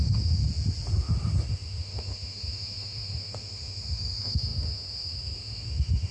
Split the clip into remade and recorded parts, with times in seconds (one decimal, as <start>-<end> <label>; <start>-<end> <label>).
0.0-0.4 remade; 0.4-1.5 recorded; 1.5-6.1 remade